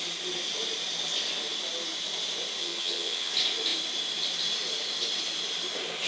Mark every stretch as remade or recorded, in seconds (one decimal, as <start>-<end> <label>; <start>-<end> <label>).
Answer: 0.0-2.6 recorded; 2.6-3.3 remade; 3.3-6.1 recorded